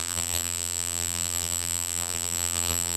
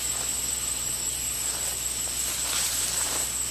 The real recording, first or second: second